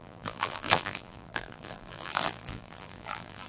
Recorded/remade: remade